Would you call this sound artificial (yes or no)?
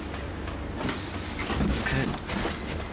no